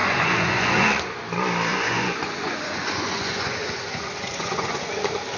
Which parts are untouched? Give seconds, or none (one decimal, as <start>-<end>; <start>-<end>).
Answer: 1.0-1.7; 4.9-5.4